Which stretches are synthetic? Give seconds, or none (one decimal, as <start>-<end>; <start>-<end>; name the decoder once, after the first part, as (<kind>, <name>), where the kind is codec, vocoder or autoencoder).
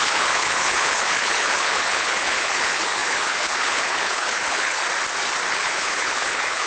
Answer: 0.0-4.8 (codec, HILCodec); 5.5-6.7